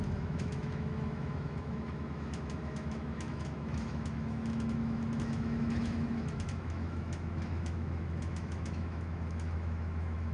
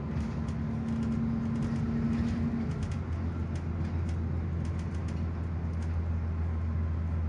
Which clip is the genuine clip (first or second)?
second